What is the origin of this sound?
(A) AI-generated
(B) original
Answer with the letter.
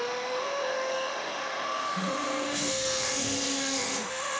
A